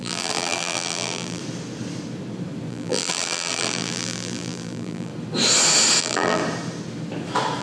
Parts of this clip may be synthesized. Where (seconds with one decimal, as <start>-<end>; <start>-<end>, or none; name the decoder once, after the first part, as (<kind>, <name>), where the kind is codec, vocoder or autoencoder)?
0.0-1.4 (vocoder, BigVGAN v2); 2.7-5.1; 6.0-6.4